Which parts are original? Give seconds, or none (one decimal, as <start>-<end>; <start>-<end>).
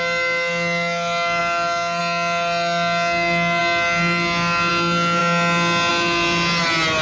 0.0-7.0